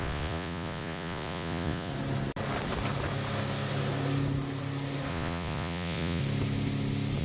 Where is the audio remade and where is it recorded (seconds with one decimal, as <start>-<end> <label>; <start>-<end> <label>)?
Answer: 0.0-1.9 remade; 1.9-5.1 recorded; 5.1-6.2 remade; 6.2-7.2 recorded